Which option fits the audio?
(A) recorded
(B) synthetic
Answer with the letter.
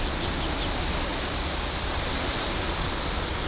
A